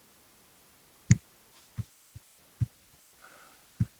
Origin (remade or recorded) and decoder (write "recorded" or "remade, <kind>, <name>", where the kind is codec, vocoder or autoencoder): recorded